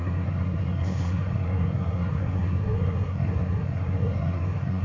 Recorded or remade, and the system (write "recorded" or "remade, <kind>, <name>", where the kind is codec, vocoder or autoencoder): remade, codec, SNAC